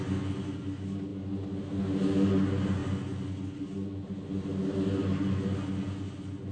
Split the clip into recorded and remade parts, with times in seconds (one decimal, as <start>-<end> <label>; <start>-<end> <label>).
0.0-6.5 recorded